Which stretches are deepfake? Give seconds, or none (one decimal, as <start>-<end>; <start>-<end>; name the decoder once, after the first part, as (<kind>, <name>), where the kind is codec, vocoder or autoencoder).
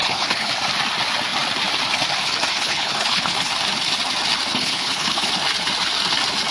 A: 0.0-0.5 (codec, HILCodec); 2.5-3.5; 4.5-5.3